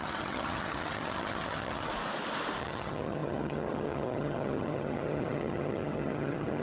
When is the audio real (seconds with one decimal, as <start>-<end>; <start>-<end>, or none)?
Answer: 1.9-2.6